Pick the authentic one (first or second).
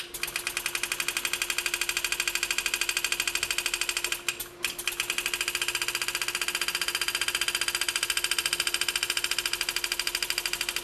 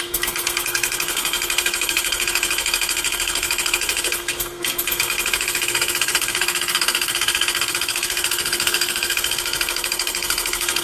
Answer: first